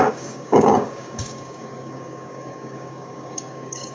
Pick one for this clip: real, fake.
fake